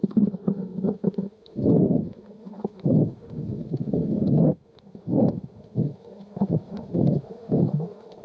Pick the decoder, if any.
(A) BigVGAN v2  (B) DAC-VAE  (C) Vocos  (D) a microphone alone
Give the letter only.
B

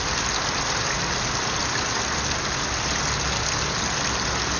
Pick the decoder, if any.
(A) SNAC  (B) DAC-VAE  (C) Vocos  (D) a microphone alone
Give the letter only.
D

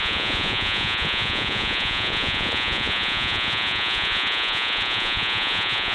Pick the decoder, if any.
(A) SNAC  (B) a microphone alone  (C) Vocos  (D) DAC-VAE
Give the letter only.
C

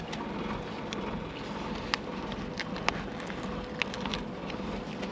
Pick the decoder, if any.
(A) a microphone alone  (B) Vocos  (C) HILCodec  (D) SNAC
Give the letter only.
A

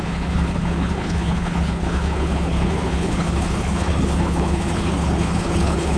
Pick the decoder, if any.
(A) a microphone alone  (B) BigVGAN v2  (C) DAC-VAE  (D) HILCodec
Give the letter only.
D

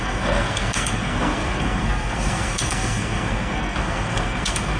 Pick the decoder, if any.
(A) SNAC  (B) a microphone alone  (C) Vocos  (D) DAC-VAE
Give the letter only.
A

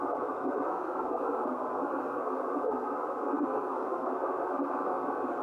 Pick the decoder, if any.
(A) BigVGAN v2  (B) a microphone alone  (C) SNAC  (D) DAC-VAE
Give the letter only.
C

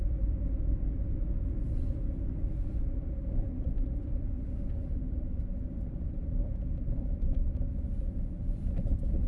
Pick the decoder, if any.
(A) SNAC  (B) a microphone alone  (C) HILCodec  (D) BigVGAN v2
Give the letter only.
D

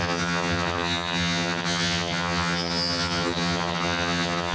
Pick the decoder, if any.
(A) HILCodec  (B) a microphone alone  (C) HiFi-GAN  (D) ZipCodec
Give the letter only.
C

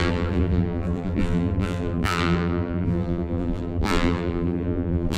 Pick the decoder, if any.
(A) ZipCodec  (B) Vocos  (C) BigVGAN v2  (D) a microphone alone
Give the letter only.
C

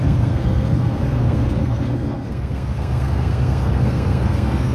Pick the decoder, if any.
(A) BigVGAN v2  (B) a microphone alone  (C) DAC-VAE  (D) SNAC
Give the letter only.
D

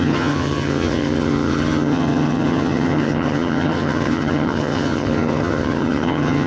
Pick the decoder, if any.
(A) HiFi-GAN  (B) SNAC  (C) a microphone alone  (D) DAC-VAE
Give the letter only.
A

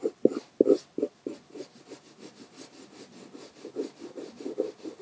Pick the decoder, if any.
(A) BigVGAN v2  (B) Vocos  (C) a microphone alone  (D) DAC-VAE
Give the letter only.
C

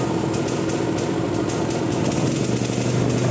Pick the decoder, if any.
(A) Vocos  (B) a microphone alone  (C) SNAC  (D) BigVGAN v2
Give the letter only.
B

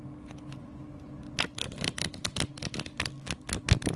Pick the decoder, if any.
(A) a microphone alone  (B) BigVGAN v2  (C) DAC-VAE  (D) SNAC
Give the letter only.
A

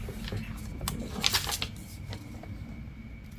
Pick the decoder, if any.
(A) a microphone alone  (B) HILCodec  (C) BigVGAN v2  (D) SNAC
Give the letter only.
A